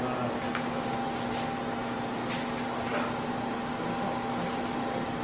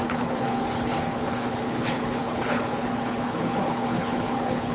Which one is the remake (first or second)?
second